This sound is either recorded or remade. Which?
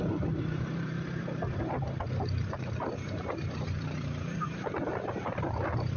remade